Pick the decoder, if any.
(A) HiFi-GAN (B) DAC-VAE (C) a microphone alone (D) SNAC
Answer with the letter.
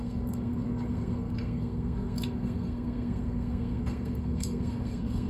D